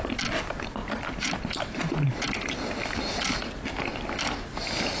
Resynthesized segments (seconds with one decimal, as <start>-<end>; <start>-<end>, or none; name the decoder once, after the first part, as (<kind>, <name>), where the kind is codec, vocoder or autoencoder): none